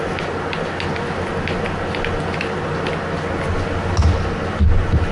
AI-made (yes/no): no